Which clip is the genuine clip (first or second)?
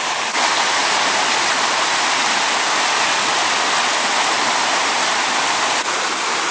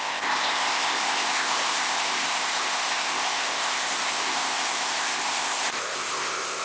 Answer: first